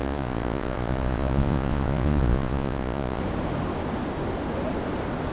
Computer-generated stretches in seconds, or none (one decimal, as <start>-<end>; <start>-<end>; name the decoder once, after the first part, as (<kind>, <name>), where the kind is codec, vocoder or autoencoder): 0.0-3.2 (vocoder, Vocos)